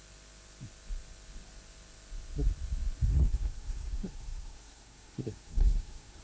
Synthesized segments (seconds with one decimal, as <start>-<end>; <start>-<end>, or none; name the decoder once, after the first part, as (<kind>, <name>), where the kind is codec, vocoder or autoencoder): 3.1-6.2 (codec, SNAC)